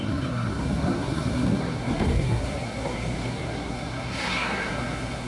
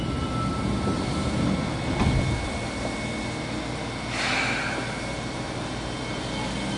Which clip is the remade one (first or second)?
first